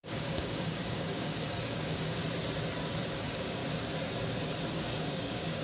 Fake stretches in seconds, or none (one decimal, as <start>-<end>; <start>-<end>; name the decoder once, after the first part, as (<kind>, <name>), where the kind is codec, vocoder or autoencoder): 0.0-2.2 (codec, DAC); 3.1-3.6; 4.7-5.6